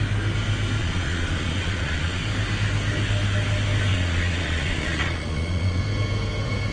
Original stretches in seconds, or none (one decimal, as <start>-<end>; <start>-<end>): 0.0-0.8; 2.2-3.9; 5.8-6.7